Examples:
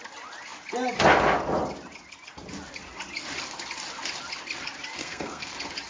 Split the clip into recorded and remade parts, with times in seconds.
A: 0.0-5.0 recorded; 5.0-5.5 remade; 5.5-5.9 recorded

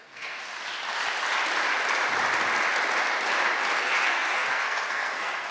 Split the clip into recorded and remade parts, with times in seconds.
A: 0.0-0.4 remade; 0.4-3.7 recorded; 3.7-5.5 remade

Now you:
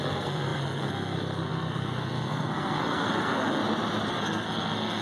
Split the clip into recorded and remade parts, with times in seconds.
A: 0.0-3.6 remade; 3.6-4.1 recorded; 4.1-5.0 remade